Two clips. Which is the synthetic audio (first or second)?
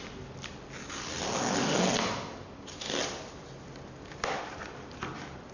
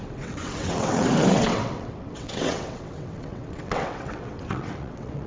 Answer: second